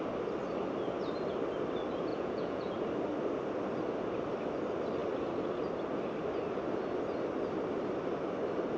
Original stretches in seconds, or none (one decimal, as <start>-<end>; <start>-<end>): 0.0-2.1; 2.7-8.8